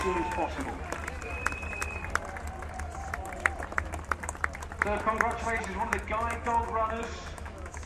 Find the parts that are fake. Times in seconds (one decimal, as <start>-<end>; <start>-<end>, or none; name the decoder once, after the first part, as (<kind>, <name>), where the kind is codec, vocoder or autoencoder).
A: 0.0-0.7 (autoencoder, DAC-VAE); 5.4-7.9